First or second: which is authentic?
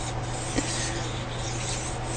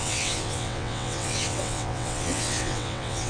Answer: first